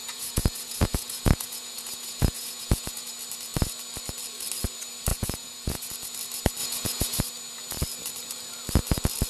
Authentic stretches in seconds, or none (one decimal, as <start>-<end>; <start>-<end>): 3.1-5.1; 5.9-6.6; 7.2-9.3